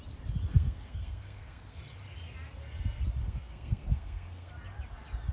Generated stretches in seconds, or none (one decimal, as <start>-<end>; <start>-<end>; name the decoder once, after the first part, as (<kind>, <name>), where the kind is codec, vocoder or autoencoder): 0.5-1.8 (codec, SNAC); 3.2-4.5